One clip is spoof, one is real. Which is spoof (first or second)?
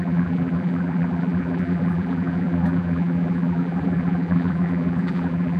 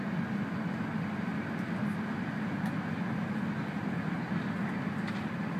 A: first